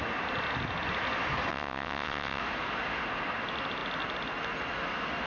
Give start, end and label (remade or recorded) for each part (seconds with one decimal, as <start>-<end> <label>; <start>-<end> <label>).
0.0-1.5 recorded; 1.5-2.4 remade; 2.4-5.3 recorded